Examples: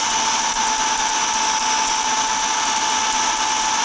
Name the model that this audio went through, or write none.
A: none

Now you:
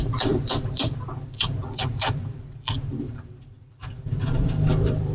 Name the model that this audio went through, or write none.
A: vocoder, BigVGAN v2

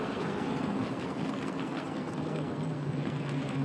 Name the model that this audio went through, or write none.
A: codec, SNAC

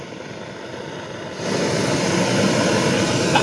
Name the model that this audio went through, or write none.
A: none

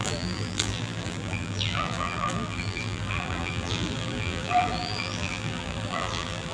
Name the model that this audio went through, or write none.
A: vocoder, BigVGAN v2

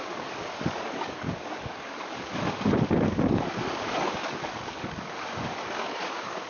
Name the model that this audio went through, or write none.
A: codec, DAC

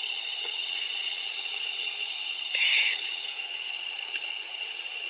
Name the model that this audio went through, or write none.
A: vocoder, HiFi-GAN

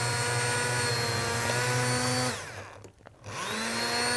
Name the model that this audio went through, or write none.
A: none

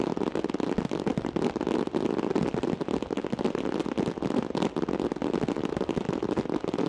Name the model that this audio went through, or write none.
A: none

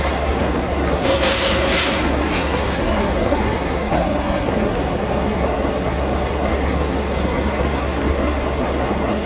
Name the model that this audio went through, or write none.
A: codec, SNAC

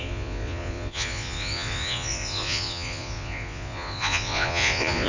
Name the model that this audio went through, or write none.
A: vocoder, Vocos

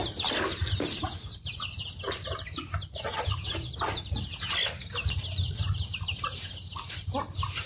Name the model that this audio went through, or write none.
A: none